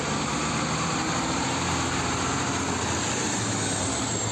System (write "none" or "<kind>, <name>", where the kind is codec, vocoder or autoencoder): none